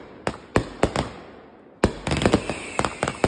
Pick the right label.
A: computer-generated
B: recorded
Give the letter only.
B